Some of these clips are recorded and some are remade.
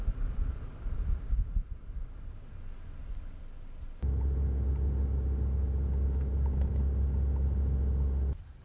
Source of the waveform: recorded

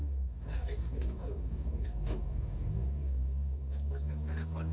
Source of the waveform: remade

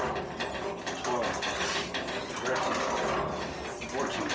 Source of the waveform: recorded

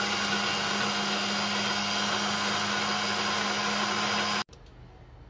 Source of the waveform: recorded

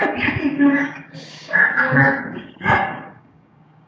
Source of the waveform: remade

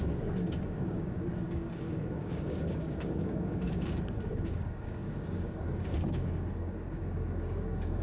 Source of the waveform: remade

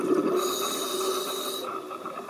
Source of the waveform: recorded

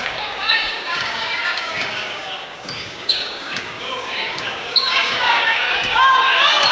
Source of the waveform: remade